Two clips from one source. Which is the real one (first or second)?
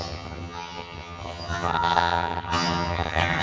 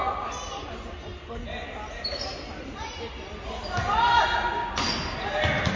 second